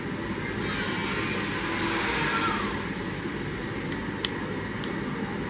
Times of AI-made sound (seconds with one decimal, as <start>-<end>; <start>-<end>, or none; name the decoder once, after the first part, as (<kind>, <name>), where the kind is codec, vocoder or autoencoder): none